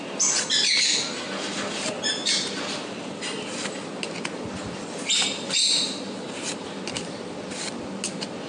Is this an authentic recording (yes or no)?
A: yes